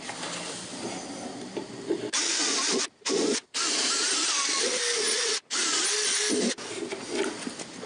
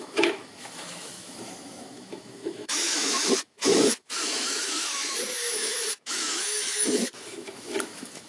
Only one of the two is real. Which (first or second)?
first